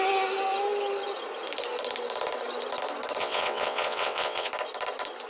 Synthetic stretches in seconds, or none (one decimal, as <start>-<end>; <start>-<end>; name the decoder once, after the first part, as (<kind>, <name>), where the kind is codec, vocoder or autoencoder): 3.2-4.5 (vocoder, WaveNeXt)